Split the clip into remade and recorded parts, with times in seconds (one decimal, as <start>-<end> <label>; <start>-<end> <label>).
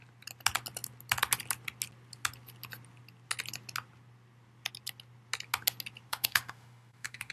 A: 0.0-6.1 recorded; 6.1-7.3 remade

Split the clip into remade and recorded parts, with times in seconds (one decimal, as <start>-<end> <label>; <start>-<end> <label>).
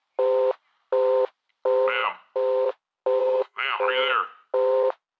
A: 0.0-3.2 recorded; 3.2-3.8 remade; 3.8-5.2 recorded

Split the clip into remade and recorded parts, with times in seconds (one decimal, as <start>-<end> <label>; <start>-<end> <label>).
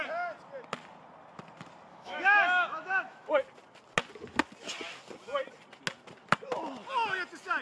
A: 0.0-1.9 recorded; 1.9-3.3 remade; 3.3-7.6 recorded